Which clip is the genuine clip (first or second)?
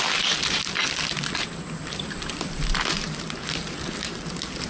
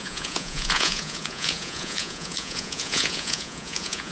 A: first